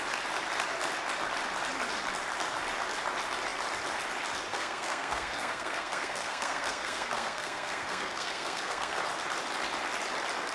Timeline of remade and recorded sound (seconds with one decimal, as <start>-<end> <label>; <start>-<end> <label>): 0.0-4.5 recorded; 4.5-9.0 remade; 9.0-10.5 recorded

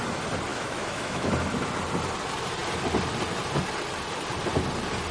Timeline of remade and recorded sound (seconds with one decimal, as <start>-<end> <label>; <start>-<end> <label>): 0.0-0.5 recorded; 0.5-1.3 remade; 1.3-5.1 recorded

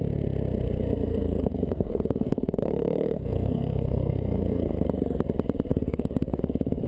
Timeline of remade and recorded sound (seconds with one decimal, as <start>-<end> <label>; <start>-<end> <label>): 0.0-1.1 recorded; 1.1-5.2 remade; 5.2-5.7 recorded; 5.7-6.4 remade; 6.4-6.9 recorded

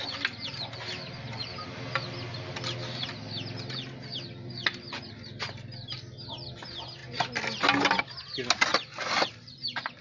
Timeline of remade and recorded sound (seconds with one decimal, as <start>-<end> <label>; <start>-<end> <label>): 0.0-10.0 recorded

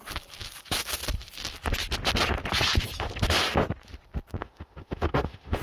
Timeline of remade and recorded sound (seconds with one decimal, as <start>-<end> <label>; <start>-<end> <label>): 0.0-4.4 recorded; 4.4-5.6 remade

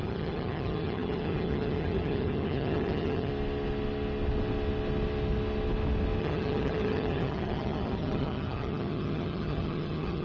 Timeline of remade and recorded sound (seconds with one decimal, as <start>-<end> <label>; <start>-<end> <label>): 0.0-3.3 remade; 3.3-6.2 recorded; 6.2-10.2 remade

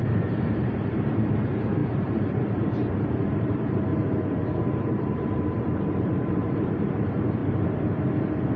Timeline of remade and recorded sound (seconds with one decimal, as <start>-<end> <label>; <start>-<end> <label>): 0.0-3.9 remade; 3.9-4.5 recorded; 4.5-8.6 remade

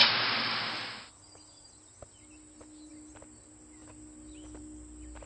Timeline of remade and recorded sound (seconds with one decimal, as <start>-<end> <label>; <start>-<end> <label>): 0.0-5.3 recorded